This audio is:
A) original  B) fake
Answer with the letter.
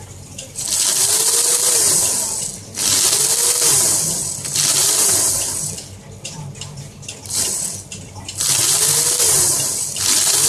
A